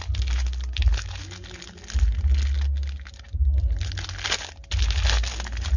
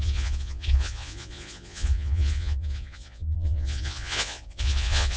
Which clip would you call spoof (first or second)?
second